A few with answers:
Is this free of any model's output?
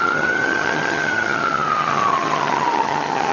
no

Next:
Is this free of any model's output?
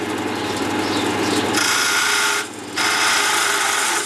yes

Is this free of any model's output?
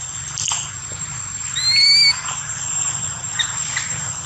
yes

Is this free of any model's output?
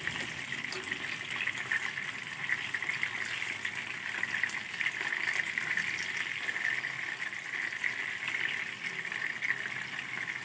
yes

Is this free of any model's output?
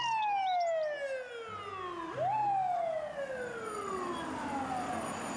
yes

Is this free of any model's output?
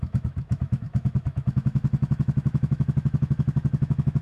no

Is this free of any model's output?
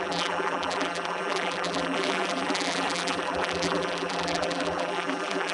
no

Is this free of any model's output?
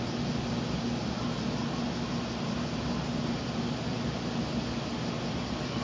yes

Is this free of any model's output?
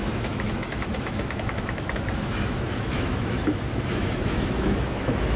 no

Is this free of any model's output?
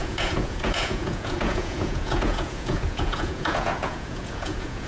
no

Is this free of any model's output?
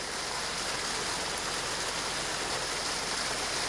yes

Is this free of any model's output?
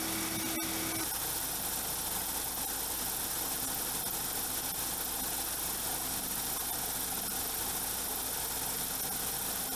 yes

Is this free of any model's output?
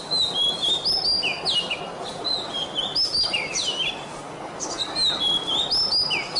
yes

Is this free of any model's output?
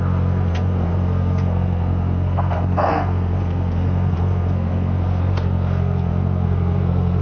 no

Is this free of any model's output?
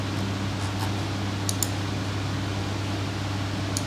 yes